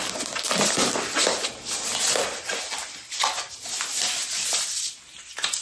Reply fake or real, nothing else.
real